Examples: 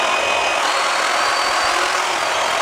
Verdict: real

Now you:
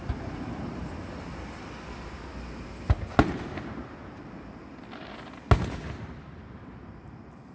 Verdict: real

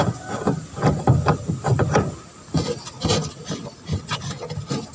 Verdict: real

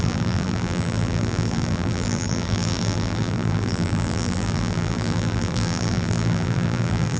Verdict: fake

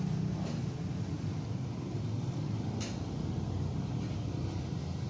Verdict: real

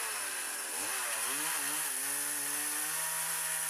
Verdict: real